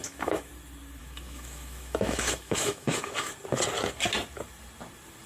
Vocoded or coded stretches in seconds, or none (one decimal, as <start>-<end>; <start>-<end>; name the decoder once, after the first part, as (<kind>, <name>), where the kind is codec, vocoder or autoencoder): 0.0-0.5 (autoencoder, DAC-VAE); 1.0-3.3

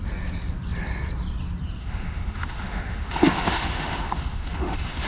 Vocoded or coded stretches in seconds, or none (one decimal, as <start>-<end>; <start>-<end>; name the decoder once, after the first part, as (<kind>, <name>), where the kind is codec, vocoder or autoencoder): 1.8-5.1 (autoencoder, DAC-VAE)

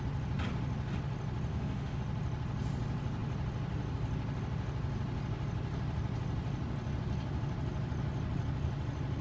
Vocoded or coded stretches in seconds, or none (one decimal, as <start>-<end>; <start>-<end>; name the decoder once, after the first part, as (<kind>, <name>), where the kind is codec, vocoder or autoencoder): 1.5-2.0 (autoencoder, DAC-VAE)